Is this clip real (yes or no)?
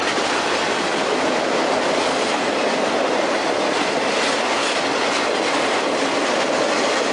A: yes